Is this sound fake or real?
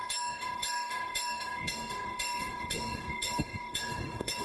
fake